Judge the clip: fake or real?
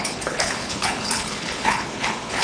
fake